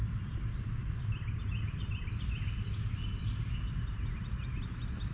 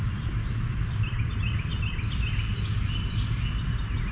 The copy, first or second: first